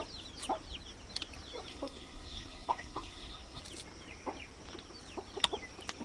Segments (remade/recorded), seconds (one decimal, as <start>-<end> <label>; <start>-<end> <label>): 0.0-1.7 recorded; 1.7-3.6 remade; 3.6-6.0 recorded